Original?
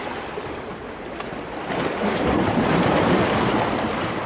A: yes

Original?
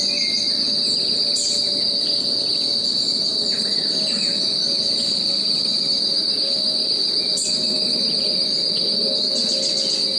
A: yes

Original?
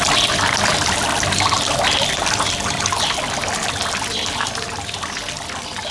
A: yes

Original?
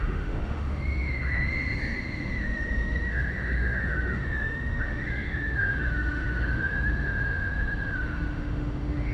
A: no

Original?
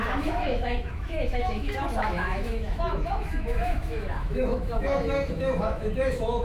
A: no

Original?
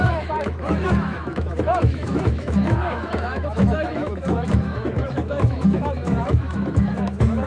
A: no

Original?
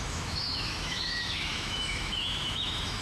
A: no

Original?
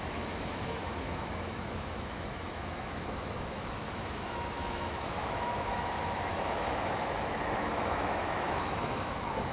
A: no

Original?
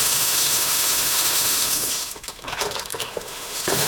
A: no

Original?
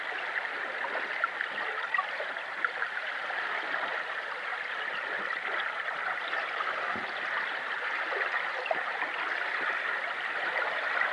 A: yes